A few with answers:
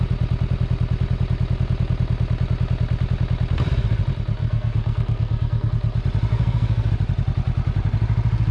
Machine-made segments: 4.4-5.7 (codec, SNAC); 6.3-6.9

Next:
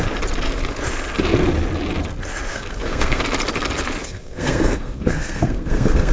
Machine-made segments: 2.5-3.2 (codec, SNAC); 4.0-6.1